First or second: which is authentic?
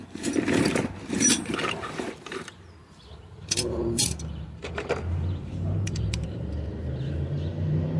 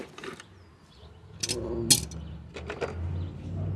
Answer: second